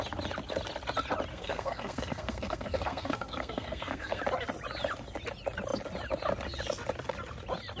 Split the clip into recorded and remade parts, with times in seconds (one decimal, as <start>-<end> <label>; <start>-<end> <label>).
0.0-1.3 recorded; 1.3-4.2 remade; 4.2-7.8 recorded